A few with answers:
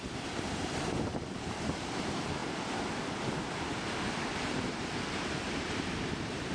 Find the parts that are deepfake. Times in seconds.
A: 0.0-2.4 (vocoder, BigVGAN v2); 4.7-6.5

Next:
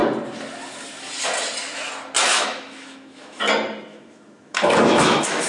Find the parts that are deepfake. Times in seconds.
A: 2.3-3.4 (autoencoder, DAC-VAE); 3.9-5.5

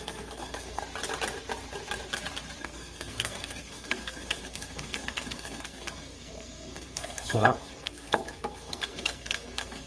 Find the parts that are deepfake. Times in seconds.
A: 0.0-0.8 (codec, SNAC); 2.6-9.9

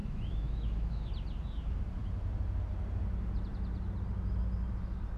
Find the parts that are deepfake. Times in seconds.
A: 0.0-1.1 (autoencoder, DAC-VAE)

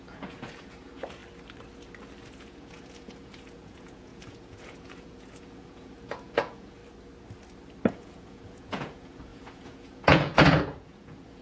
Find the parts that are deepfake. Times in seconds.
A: 0.0-1.2 (vocoder, Vocos); 2.4-6.8; 7.9-11.4

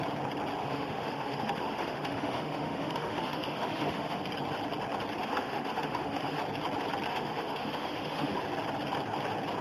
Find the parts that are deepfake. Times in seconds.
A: 0.6-4.2 (autoencoder, DAC-VAE); 5.2-6.4; 7.1-8.4

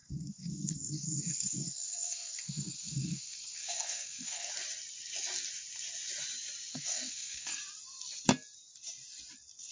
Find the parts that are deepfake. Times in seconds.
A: 0.0-4.5 (codec, SNAC); 6.7-7.6

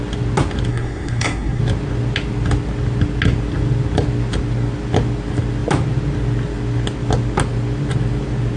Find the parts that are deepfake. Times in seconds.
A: 0.7-1.6 (codec, SNAC)